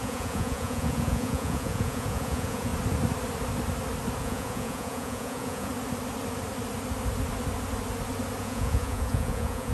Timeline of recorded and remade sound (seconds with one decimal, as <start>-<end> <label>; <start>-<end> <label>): 0.0-2.7 remade; 2.7-4.2 recorded; 4.2-5.7 remade; 5.7-8.4 recorded; 8.4-9.7 remade